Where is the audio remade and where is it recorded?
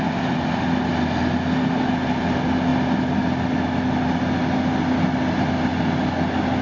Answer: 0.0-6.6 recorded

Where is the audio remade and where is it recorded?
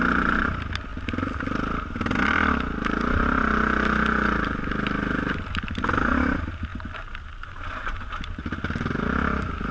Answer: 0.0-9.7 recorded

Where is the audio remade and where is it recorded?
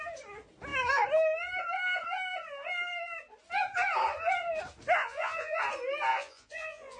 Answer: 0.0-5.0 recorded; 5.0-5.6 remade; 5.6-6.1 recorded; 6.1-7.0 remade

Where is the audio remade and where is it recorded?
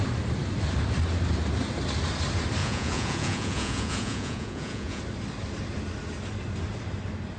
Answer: 0.0-2.6 recorded; 2.6-5.0 remade; 5.0-7.4 recorded